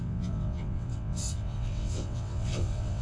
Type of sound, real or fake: fake